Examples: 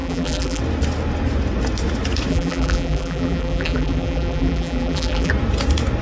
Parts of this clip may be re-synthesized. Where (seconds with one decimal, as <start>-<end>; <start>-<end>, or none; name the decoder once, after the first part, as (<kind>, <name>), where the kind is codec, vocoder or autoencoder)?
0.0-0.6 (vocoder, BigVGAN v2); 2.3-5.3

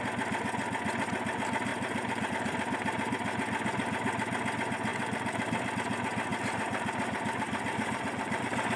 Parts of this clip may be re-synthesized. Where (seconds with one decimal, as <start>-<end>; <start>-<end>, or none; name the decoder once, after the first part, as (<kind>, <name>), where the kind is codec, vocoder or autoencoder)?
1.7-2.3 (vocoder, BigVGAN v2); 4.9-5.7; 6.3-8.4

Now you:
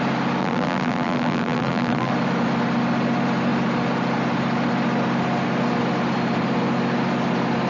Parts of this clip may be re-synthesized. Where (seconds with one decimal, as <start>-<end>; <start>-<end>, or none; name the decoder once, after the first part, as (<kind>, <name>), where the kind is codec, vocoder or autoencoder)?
0.4-2.1 (vocoder, BigVGAN v2)